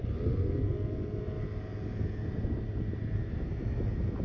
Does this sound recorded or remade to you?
recorded